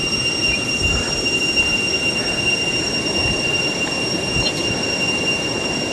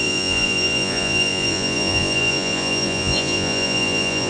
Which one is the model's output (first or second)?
second